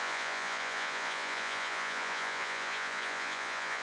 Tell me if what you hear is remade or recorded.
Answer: remade